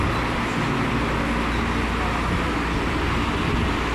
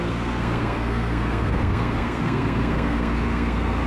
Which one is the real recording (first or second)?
first